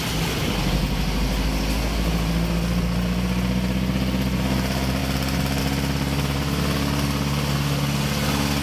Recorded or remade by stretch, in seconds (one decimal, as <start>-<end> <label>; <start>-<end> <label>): 0.0-8.6 recorded